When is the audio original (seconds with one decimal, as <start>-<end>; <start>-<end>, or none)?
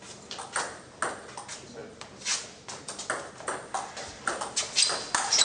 0.0-5.4